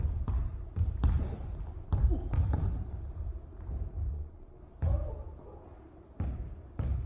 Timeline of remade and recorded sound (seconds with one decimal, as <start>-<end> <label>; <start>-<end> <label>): 0.0-4.1 recorded; 4.1-4.6 remade; 4.6-7.1 recorded